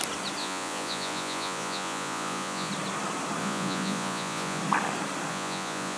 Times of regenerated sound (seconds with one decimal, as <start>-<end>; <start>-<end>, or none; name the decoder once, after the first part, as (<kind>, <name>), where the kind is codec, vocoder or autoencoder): 0.4-2.7 (vocoder, Vocos); 3.4-4.6; 5.3-6.0